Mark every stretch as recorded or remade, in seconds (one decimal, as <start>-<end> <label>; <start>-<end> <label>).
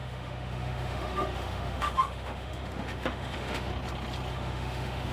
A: 0.0-3.7 remade; 3.7-4.3 recorded; 4.3-5.1 remade